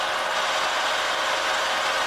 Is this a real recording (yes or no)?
yes